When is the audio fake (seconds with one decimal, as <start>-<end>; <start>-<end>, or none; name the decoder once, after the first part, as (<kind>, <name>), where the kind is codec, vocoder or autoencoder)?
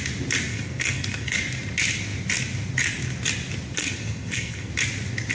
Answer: 0.5-1.4 (codec, SNAC); 3.8-4.7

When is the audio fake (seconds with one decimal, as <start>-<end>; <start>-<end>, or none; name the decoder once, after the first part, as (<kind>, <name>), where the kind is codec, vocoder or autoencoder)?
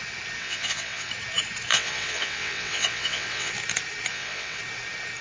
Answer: 0.4-1.1 (vocoder, WaveNeXt); 1.7-3.5; 4.1-4.6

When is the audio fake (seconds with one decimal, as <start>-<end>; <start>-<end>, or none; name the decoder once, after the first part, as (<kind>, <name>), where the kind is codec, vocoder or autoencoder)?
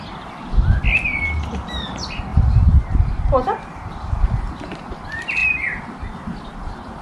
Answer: none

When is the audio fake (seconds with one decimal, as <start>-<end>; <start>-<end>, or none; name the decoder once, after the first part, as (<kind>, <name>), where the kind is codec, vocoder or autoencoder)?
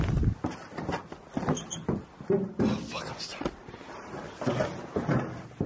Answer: none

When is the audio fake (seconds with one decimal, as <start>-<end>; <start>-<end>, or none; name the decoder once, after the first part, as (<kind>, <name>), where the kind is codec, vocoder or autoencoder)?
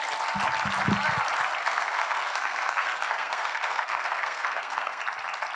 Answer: 1.6-5.0 (codec, SNAC)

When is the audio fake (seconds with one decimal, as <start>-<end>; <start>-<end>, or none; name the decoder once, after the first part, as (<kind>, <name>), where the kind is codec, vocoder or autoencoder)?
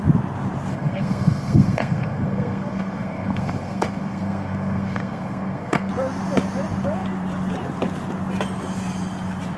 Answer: 0.7-5.9 (codec, SNAC)